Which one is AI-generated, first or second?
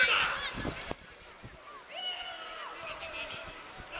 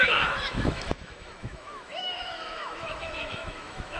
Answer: second